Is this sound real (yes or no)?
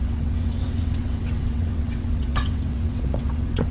no